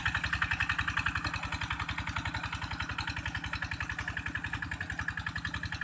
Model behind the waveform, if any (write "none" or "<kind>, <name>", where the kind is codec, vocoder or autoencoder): none